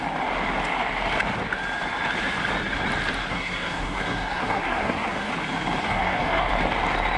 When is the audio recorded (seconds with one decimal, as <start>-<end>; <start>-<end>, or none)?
0.0-3.3; 5.3-5.8; 6.5-7.2